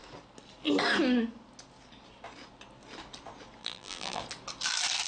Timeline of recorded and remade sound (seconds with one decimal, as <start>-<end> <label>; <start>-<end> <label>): 0.0-3.6 recorded; 3.6-4.2 remade; 4.2-5.1 recorded